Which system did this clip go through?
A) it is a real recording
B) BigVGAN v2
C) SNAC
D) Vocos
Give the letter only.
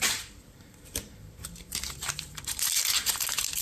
B